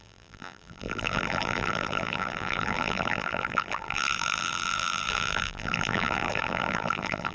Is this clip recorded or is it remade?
remade